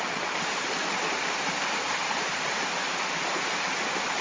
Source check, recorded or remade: recorded